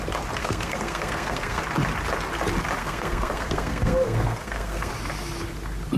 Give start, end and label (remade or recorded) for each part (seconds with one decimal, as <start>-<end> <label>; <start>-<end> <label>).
0.0-0.4 recorded; 0.4-1.6 remade; 1.6-2.8 recorded; 2.8-4.9 remade; 4.9-6.0 recorded